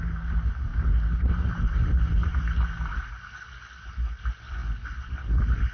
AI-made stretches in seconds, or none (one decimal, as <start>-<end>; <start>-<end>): none

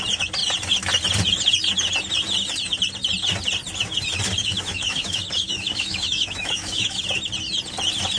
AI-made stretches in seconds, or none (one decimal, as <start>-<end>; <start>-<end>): 4.4-7.0

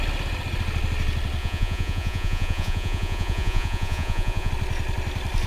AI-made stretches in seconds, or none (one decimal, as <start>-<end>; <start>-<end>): 1.4-4.5

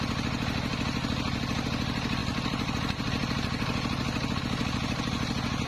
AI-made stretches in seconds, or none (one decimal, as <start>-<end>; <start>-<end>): none

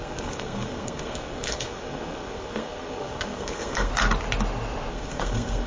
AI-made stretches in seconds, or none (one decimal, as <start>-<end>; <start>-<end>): 0.0-3.9; 4.9-5.7

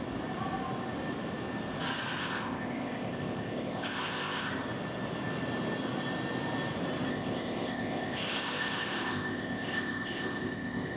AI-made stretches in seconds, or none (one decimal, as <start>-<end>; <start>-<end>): 2.2-4.5; 7.1-11.0

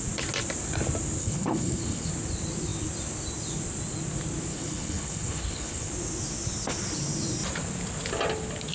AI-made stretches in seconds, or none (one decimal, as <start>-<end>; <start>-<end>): 1.2-2.1; 4.5-5.9

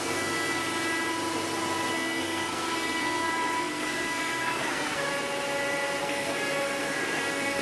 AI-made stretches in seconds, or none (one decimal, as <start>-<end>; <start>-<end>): 0.0-0.6; 1.9-5.1; 6.0-7.6